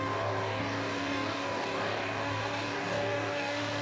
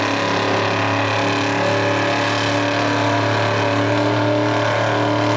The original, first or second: second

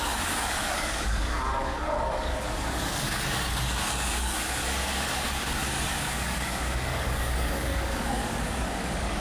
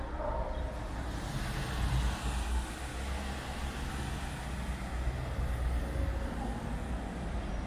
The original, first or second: second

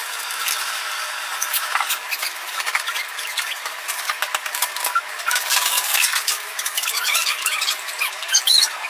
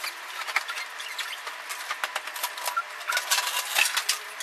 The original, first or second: second